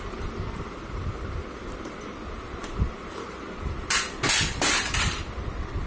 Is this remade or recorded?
remade